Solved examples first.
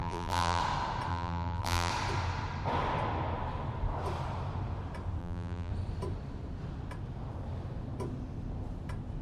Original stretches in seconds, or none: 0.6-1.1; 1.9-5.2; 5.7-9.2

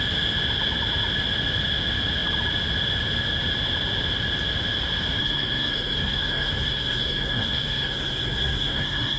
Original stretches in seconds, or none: 0.0-5.2

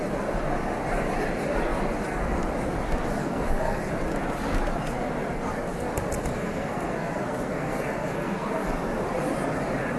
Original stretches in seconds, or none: 0.0-3.2; 3.8-6.3; 8.7-10.0

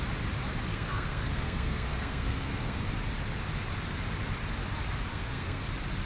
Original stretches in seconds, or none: 0.0-0.7; 2.8-5.1; 5.6-6.1

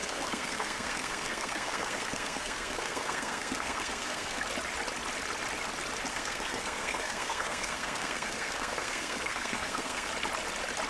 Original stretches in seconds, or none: 4.4-6.1; 10.1-10.9

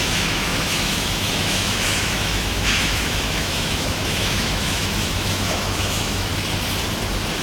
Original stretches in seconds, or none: 6.3-7.4

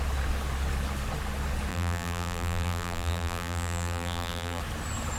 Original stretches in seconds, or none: 0.0-1.7; 4.6-5.2

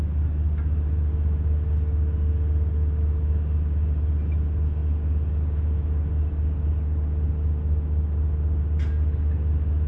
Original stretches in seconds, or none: 0.0-9.9